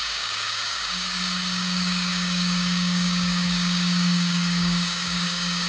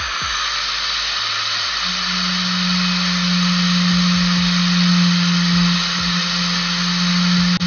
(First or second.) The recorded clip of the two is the second